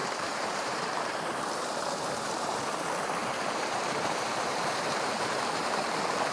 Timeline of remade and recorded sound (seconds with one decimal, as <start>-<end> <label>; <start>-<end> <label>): 0.0-2.6 remade; 2.6-3.2 recorded; 3.2-6.3 remade